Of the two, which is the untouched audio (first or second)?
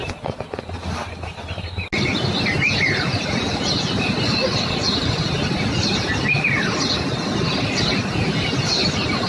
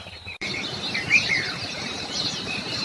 first